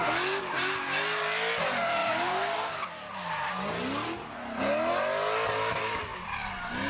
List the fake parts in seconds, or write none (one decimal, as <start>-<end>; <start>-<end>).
2.0-2.8